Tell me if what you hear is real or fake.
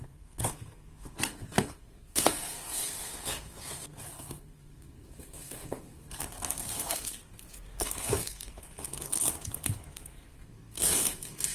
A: fake